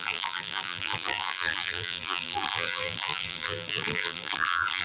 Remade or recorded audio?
remade